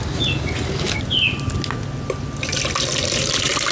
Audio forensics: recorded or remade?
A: recorded